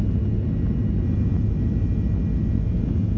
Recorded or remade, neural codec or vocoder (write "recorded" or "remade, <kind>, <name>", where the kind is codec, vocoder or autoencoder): recorded